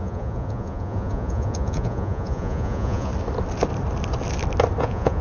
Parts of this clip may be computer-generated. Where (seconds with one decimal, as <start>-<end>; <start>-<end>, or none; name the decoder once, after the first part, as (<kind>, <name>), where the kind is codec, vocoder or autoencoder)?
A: 0.0-3.1 (vocoder, Vocos); 4.8-5.2